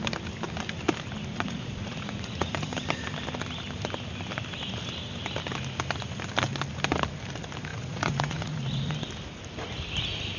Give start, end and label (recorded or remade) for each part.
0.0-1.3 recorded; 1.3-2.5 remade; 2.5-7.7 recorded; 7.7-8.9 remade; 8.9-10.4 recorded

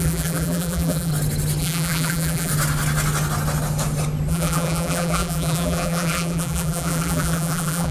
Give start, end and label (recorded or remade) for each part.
0.0-1.1 remade; 1.1-1.6 recorded; 1.6-2.5 remade; 2.5-4.3 recorded; 4.3-7.9 remade

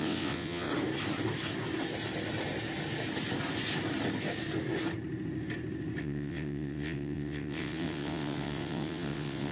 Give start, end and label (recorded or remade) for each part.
0.0-0.7 remade; 0.7-6.0 recorded; 6.0-9.5 remade